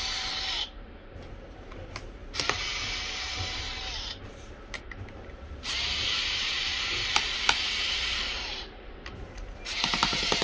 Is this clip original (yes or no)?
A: no